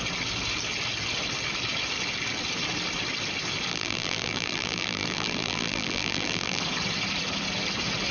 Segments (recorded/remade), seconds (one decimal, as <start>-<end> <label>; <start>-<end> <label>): 0.0-3.7 recorded; 3.7-6.6 remade; 6.6-8.1 recorded